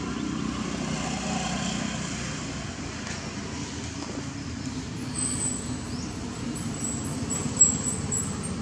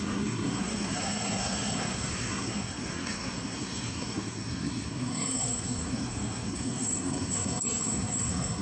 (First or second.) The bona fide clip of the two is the first